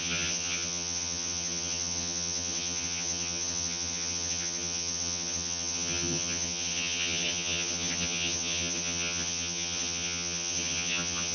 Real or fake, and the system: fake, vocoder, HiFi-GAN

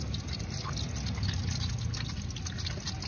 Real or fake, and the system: real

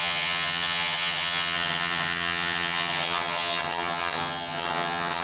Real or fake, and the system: fake, vocoder, HiFi-GAN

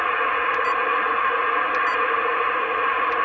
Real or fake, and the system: real